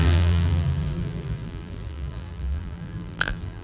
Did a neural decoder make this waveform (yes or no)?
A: yes